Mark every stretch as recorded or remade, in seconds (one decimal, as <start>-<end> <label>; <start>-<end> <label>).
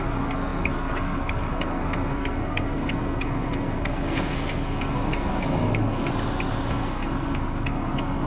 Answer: 0.0-6.1 remade; 6.1-6.7 recorded; 6.7-8.3 remade